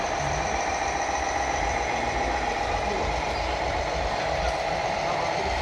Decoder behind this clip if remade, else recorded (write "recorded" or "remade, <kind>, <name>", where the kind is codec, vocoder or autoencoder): remade, vocoder, BigVGAN v2